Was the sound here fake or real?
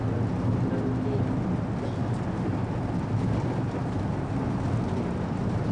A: real